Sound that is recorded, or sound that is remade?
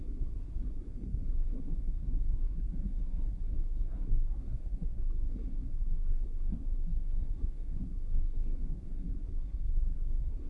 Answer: remade